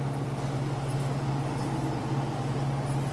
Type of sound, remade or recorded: recorded